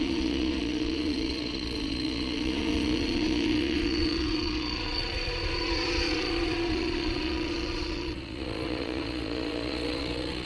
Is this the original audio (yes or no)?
no